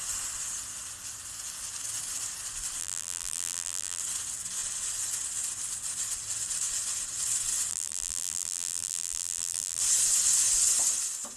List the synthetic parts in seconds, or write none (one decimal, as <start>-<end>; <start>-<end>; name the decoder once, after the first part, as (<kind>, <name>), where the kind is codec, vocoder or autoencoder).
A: 2.8-4.0 (vocoder, BigVGAN v2); 7.7-9.8

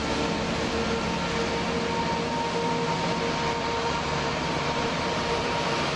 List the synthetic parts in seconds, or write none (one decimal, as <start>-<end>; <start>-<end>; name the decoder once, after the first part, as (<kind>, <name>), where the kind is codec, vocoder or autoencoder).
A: 3.6-6.0 (vocoder, BigVGAN v2)